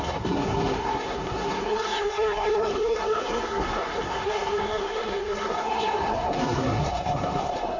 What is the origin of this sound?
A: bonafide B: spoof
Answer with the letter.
B